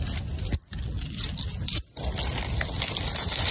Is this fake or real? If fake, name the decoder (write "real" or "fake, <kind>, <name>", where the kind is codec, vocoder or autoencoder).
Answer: real